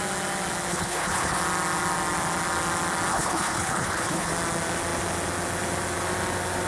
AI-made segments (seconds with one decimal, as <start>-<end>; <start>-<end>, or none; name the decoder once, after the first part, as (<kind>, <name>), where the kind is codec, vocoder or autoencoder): 0.7-1.4 (codec, HILCodec); 3.1-4.3